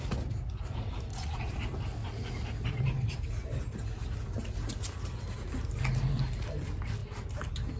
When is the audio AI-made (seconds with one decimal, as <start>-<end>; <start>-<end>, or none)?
1.1-1.6